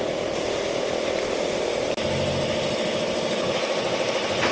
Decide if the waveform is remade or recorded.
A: recorded